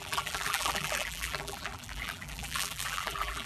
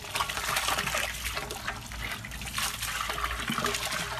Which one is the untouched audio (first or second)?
second